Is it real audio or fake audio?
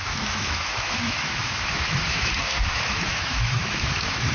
fake